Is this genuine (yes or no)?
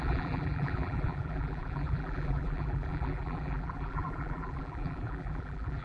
no